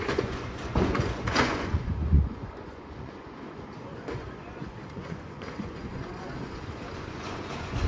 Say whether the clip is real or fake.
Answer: fake